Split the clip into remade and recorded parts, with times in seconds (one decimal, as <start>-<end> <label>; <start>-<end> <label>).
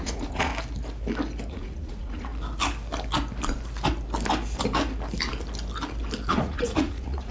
0.0-0.5 remade; 0.5-1.5 recorded; 1.5-2.3 remade; 2.3-6.3 recorded; 6.3-7.3 remade